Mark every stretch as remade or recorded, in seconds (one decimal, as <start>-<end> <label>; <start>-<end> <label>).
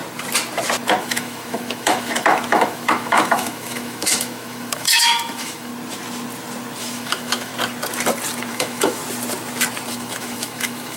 0.0-1.0 recorded; 1.0-5.7 remade; 5.7-6.8 recorded; 6.8-7.5 remade; 7.5-8.5 recorded; 8.5-9.0 remade; 9.0-9.9 recorded; 9.9-11.0 remade